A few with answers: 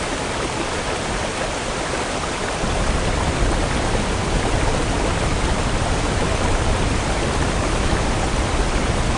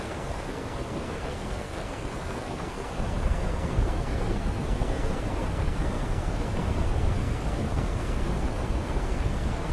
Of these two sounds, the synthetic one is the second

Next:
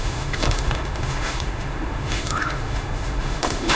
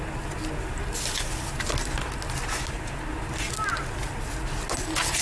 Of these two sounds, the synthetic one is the first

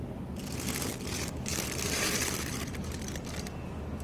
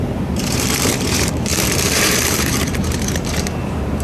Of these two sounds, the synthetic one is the second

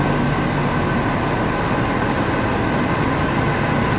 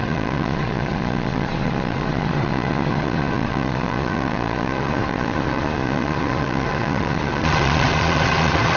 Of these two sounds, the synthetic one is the second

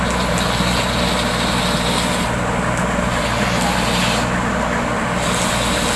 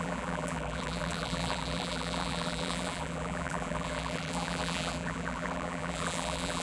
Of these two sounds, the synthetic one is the second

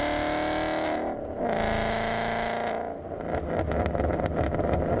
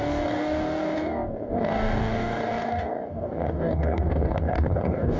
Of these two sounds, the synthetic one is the second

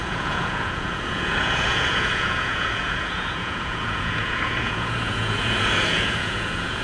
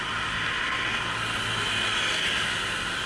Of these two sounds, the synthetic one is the first